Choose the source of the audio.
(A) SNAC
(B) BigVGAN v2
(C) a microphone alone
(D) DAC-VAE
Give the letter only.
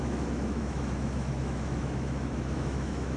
D